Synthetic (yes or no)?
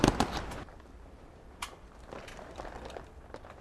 yes